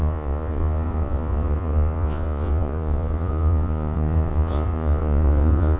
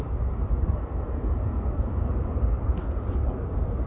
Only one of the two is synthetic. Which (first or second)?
first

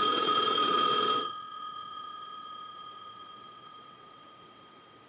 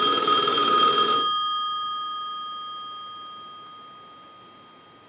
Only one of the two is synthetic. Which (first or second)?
first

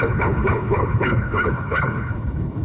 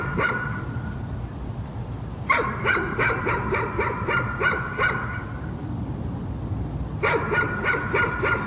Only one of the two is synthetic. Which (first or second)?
first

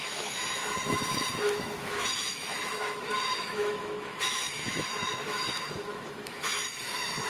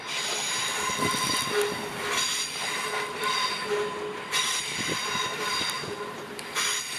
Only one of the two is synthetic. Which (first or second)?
first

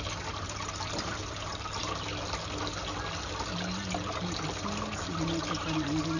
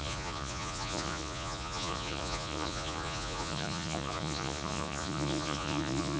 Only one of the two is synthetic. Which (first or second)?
second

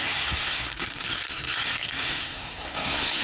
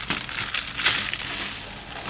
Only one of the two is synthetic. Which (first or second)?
first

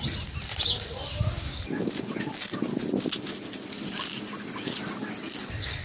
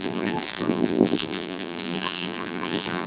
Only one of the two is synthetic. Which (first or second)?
second